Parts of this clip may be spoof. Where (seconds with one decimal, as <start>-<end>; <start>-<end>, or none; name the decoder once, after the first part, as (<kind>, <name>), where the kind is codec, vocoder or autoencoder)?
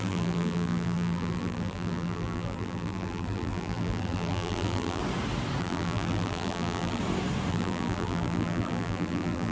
0.0-5.0 (vocoder, BigVGAN v2); 5.6-7.0; 7.5-9.5